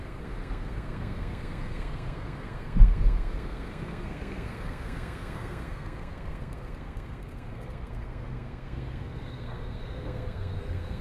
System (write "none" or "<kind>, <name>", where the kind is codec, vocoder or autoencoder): codec, SNAC